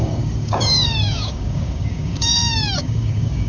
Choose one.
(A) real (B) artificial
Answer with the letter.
B